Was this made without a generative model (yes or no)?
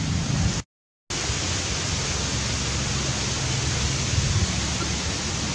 yes